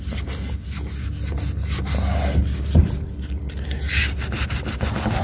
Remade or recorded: recorded